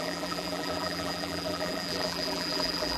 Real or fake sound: fake